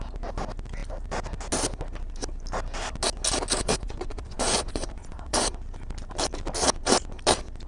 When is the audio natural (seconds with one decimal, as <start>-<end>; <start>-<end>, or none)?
0.0-3.6; 5.5-7.7